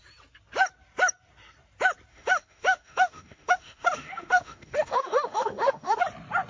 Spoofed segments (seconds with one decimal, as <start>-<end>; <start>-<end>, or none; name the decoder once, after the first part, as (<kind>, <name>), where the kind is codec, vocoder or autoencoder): 2.1-6.0 (autoencoder, DAC-VAE)